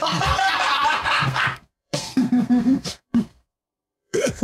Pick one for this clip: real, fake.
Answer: fake